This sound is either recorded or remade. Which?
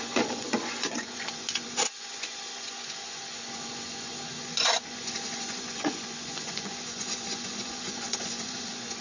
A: remade